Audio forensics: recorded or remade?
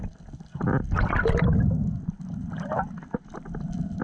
remade